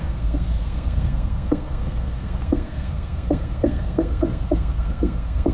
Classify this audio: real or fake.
fake